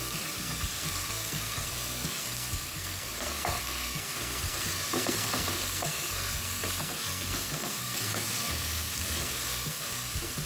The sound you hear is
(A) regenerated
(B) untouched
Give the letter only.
A